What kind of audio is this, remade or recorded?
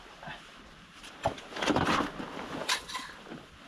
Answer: recorded